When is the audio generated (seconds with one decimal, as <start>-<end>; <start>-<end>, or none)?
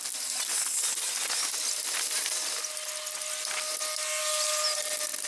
none